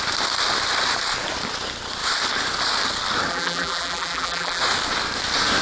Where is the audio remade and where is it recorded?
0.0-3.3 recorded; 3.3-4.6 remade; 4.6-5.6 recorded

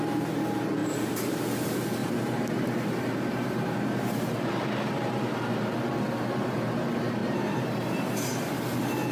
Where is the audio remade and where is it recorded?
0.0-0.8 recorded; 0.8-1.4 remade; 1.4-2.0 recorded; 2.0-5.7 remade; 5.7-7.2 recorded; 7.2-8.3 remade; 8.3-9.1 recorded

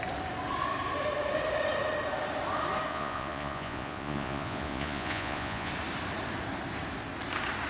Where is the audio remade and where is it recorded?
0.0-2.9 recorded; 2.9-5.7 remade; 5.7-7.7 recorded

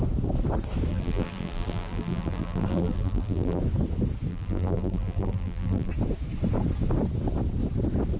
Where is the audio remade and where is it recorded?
0.0-0.9 recorded; 0.9-3.6 remade; 3.6-4.3 recorded; 4.3-5.9 remade; 5.9-8.2 recorded

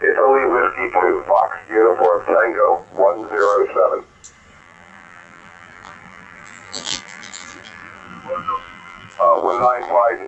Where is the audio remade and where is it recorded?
0.0-3.6 remade; 3.6-4.6 recorded; 4.6-10.3 remade